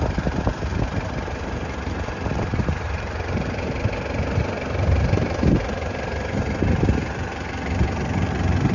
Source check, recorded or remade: remade